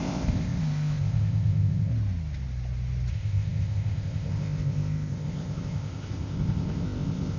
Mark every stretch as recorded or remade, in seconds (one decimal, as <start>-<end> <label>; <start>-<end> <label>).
0.0-1.9 remade; 1.9-3.1 recorded; 3.1-7.4 remade